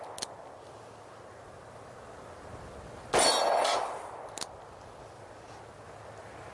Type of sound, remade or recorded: recorded